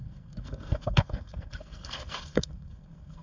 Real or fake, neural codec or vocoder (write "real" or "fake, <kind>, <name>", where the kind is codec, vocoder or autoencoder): fake, codec, SNAC